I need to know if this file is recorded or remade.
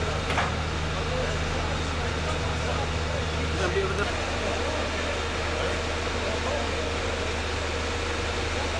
recorded